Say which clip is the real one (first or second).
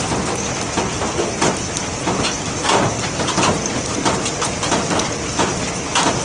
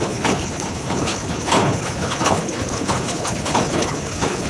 first